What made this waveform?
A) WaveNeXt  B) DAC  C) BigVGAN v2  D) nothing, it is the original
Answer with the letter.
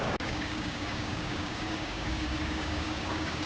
B